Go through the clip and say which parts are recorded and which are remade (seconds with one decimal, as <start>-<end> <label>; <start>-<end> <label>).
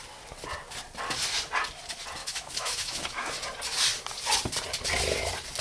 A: 0.0-2.2 recorded; 2.2-3.3 remade; 3.3-5.6 recorded